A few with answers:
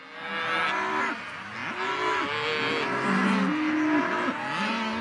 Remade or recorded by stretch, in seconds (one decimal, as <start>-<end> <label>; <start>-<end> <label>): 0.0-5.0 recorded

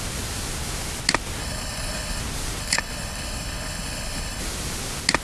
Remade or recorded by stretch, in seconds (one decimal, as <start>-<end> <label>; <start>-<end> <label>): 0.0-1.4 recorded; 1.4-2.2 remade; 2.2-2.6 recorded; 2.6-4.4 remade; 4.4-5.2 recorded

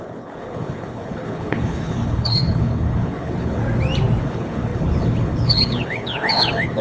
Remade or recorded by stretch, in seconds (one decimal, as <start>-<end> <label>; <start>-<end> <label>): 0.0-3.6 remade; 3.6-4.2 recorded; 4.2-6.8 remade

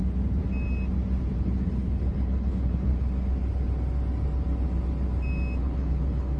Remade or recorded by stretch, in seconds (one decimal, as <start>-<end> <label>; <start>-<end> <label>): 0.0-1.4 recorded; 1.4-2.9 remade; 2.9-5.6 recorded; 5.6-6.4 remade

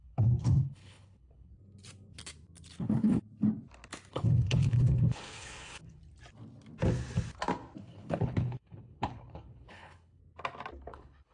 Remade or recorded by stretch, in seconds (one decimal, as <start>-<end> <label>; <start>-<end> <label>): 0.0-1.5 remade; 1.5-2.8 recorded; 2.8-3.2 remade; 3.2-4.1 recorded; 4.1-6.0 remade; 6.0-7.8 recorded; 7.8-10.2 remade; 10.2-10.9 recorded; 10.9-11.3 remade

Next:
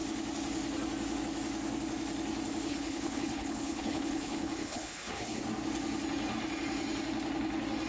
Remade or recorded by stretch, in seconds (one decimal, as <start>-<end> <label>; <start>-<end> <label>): 0.0-2.7 recorded; 2.7-5.4 remade; 5.4-7.9 recorded

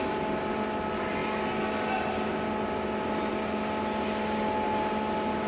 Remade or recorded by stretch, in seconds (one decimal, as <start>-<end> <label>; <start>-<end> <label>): 0.0-5.5 recorded